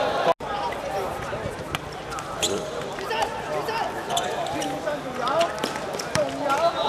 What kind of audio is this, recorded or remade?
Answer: recorded